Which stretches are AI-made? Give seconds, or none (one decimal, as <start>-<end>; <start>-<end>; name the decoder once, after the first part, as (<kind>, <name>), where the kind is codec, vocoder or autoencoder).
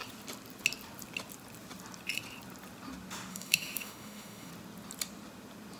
3.3-4.5 (autoencoder, DAC-VAE)